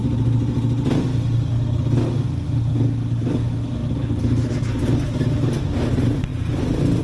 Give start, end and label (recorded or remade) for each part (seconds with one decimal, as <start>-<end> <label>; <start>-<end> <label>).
0.0-7.0 recorded